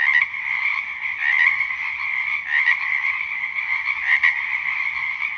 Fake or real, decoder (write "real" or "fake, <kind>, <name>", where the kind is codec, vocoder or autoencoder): real